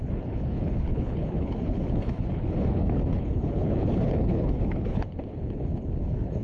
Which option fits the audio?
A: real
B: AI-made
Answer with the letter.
B